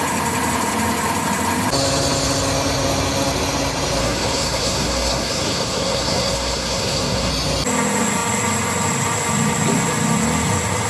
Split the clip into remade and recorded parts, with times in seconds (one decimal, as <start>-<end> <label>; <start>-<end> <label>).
0.0-4.0 recorded; 4.0-7.3 remade; 7.3-10.9 recorded